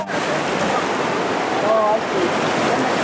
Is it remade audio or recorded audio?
recorded